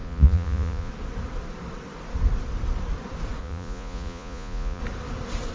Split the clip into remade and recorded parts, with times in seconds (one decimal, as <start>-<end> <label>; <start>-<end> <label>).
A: 0.0-0.9 remade; 0.9-3.4 recorded; 3.4-4.8 remade; 4.8-5.5 recorded